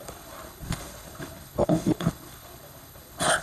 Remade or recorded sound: remade